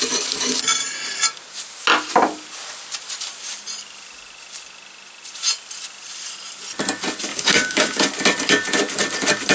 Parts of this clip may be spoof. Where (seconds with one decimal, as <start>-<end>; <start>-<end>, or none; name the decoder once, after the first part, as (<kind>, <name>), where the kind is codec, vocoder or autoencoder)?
7.3-8.0 (codec, DAC)